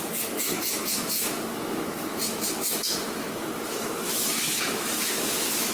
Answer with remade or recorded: remade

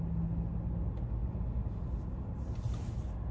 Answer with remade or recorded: recorded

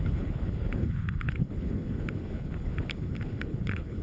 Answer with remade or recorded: remade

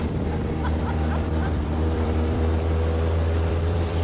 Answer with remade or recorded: remade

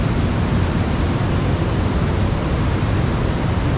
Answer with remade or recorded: recorded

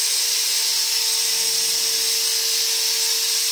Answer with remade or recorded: recorded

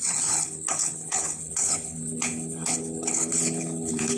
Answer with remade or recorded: remade